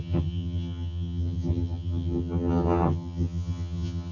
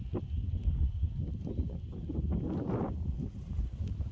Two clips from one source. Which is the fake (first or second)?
first